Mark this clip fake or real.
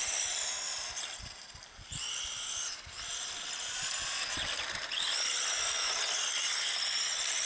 real